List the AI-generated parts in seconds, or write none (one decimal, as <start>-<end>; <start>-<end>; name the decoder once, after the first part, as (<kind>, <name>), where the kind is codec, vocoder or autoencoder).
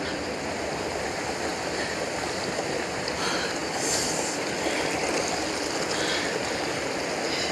none